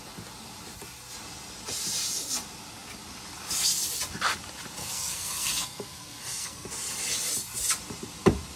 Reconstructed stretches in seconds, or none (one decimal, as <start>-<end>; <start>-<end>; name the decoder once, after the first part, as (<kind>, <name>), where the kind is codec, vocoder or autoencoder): 4.8-6.7 (codec, SNAC)